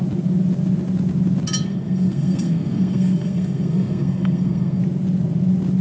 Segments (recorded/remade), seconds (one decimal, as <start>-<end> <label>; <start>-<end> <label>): 0.0-1.7 recorded; 1.7-4.8 remade; 4.8-5.8 recorded

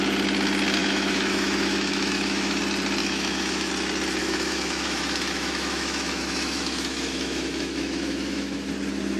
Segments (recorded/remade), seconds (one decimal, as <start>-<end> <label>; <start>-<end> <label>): 0.0-0.8 recorded; 0.8-2.6 remade; 2.6-3.0 recorded; 3.0-3.7 remade; 3.7-4.2 recorded; 4.2-8.7 remade; 8.7-9.2 recorded

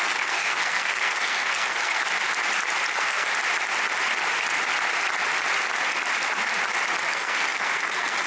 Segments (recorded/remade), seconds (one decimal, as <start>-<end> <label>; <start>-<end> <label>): 0.0-2.0 remade; 2.0-2.9 recorded; 2.9-3.3 remade; 3.3-7.1 recorded; 7.1-8.3 remade

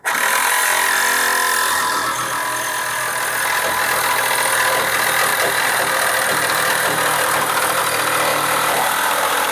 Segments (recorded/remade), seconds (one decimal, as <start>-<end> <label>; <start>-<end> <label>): 0.0-5.3 recorded; 5.3-7.8 remade; 7.8-8.3 recorded; 8.3-9.5 remade

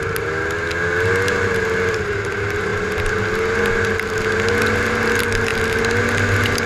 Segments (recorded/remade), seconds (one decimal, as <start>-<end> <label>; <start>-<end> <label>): 0.0-6.7 recorded

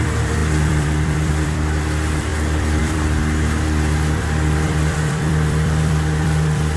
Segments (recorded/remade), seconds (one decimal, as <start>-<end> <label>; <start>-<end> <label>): 0.0-6.8 remade

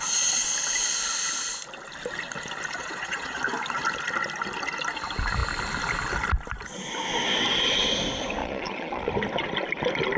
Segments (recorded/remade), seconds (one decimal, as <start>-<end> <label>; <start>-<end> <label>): 0.0-2.8 recorded; 2.8-3.4 remade; 3.4-8.4 recorded; 8.4-9.1 remade; 9.1-10.2 recorded

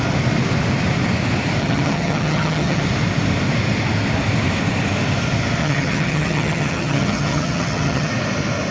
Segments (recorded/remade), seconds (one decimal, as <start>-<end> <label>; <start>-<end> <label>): 0.0-1.6 recorded; 1.6-2.8 remade; 2.8-5.6 recorded; 5.6-8.1 remade; 8.1-8.7 recorded